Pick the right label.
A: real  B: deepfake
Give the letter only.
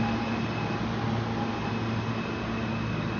A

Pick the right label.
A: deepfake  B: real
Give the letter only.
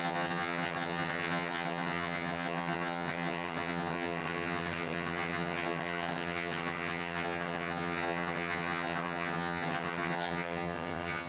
A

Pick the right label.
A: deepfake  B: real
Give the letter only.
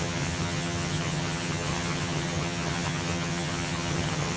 A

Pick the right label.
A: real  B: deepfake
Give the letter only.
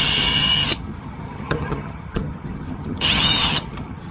B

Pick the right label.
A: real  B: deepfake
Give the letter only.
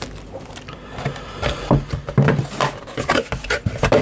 A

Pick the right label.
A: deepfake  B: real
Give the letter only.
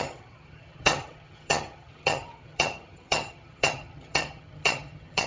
A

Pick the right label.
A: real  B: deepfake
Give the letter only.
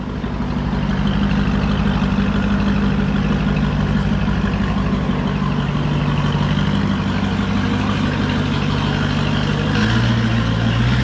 A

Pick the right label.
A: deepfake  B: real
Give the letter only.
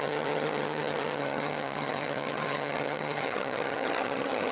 A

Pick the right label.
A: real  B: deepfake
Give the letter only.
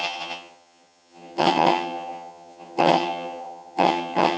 B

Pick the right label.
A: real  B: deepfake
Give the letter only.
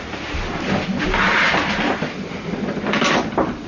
A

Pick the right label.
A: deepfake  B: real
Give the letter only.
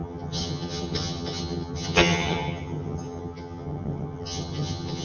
A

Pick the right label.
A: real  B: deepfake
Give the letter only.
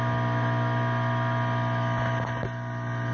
A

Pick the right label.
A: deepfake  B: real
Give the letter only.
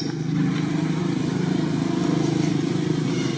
B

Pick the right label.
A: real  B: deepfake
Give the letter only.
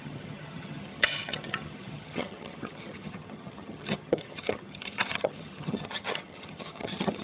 B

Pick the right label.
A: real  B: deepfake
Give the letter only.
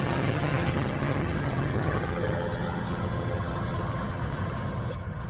B